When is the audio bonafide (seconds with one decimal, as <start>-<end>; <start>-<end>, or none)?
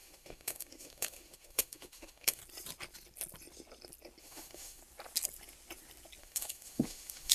2.4-4.2; 4.8-6.2